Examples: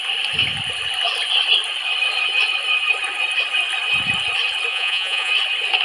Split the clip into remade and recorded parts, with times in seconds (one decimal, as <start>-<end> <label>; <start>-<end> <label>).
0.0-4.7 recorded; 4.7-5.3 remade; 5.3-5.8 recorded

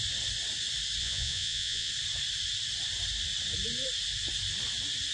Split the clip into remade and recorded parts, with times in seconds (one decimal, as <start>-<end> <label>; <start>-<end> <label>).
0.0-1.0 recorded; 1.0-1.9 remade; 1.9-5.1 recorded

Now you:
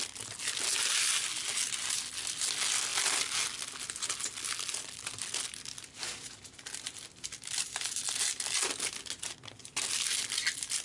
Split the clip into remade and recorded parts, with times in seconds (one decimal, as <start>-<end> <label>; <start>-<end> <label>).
0.0-10.8 recorded

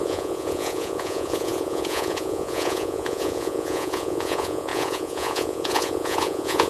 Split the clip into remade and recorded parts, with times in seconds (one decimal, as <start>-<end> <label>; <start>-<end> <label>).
0.0-6.7 remade

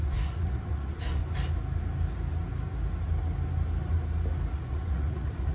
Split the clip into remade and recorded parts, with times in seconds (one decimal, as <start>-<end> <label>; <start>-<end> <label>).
0.0-1.2 remade; 1.2-4.5 recorded; 4.5-5.5 remade

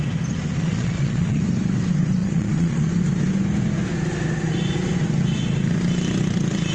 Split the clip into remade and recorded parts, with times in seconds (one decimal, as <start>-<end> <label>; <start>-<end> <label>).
0.0-0.6 recorded; 0.6-1.4 remade; 1.4-2.2 recorded; 2.2-2.9 remade; 2.9-6.7 recorded